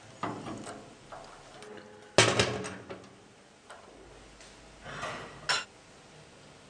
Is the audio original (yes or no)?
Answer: yes